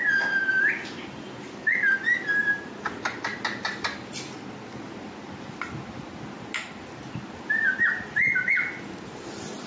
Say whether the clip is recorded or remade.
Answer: recorded